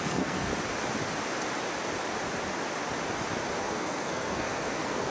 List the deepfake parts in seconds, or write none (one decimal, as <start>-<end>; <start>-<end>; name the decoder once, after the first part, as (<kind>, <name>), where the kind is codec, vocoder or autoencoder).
0.0-0.5 (codec, SNAC); 3.6-5.1